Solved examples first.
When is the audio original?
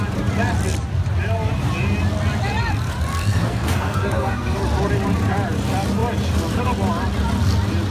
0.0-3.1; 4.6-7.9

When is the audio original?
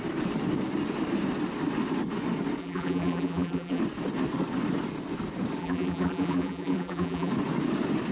0.0-2.6; 3.8-5.6; 7.3-8.1